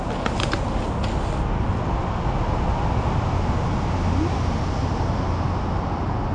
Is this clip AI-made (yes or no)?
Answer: no